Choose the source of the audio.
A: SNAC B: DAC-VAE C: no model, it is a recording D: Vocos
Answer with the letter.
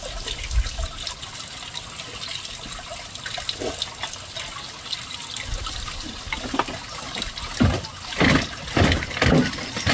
C